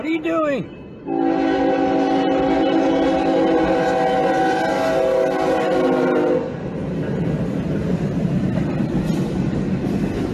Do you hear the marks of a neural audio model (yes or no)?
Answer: no